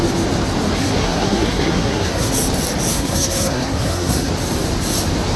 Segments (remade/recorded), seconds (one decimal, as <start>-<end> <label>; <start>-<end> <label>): 0.0-0.8 recorded; 0.8-2.3 remade; 2.3-2.9 recorded; 2.9-4.3 remade; 4.3-5.4 recorded